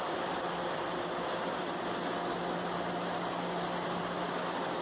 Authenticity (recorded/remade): recorded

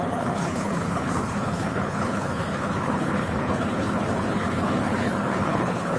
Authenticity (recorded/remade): remade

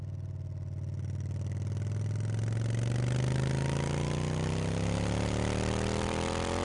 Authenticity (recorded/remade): recorded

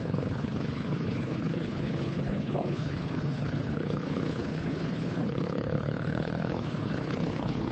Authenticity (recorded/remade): remade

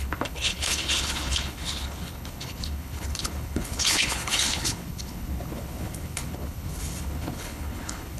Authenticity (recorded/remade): remade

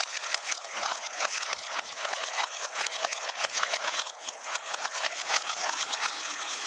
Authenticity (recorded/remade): remade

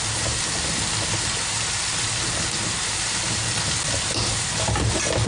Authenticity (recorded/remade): recorded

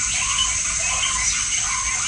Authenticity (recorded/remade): recorded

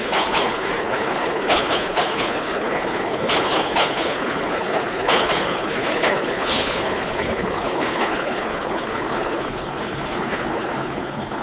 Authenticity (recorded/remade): remade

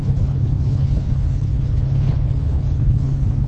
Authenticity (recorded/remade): remade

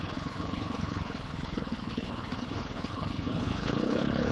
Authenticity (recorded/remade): remade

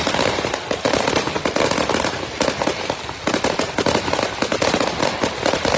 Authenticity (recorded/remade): recorded